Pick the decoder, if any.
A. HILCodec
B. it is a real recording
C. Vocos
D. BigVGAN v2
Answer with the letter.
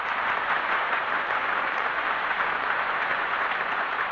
C